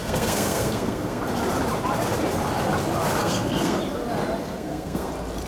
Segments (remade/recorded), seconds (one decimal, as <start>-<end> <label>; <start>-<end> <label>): 0.0-1.2 remade; 1.2-3.2 recorded; 3.2-3.8 remade; 3.8-4.4 recorded; 4.4-5.1 remade; 5.1-5.5 recorded